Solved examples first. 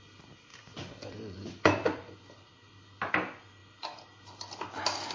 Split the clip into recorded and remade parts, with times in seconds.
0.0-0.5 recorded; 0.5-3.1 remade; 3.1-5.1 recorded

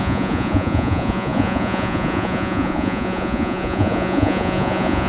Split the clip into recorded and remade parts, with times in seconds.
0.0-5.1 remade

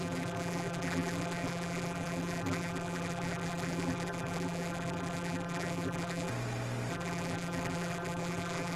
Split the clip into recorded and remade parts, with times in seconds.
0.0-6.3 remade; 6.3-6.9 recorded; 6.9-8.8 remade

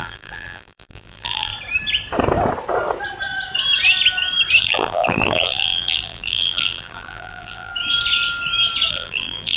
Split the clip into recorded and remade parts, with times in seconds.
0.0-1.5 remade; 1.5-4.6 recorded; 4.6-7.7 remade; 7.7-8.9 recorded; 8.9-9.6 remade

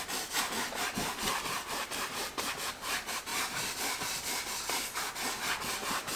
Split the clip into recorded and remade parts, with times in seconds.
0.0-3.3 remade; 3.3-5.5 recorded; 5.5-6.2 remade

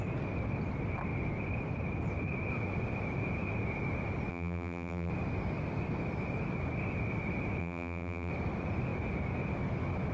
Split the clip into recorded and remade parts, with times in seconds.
0.0-4.3 recorded; 4.3-5.1 remade; 5.1-7.6 recorded; 7.6-8.3 remade; 8.3-10.1 recorded

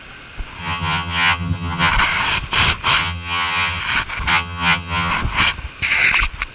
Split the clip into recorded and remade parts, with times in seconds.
0.0-0.6 recorded; 0.6-1.9 remade; 1.9-3.0 recorded; 3.0-3.8 remade; 3.8-4.3 recorded; 4.3-5.1 remade; 5.1-6.5 recorded

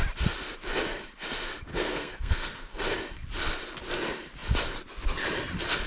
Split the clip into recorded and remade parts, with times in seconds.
0.0-1.7 recorded; 1.7-2.8 remade; 2.8-5.9 recorded